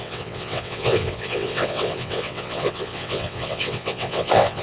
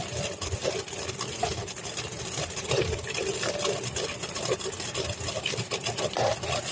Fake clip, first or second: first